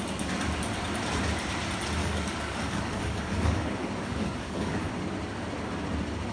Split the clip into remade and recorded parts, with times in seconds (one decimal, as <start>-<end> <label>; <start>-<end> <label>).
0.0-2.0 recorded; 2.0-4.9 remade; 4.9-6.3 recorded